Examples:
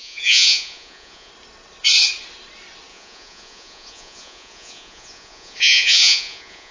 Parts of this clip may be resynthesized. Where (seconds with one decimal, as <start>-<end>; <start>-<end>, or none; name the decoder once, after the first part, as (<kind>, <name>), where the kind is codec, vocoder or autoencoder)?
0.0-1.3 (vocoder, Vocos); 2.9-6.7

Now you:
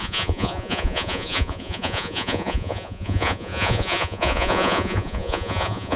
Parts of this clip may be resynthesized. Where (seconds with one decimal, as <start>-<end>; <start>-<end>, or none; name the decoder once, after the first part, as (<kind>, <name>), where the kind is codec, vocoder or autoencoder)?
0.0-6.0 (vocoder, Vocos)

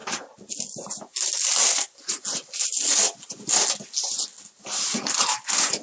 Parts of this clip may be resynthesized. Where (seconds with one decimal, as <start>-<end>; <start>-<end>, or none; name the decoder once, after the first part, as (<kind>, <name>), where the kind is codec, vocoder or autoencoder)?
none